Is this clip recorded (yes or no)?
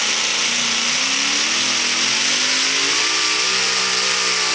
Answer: yes